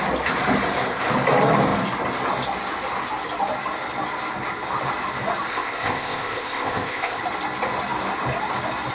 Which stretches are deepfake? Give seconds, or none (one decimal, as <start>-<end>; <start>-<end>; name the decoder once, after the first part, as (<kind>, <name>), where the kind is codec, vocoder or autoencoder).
5.5-7.2 (codec, ZipCodec)